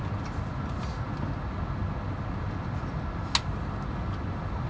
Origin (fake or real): real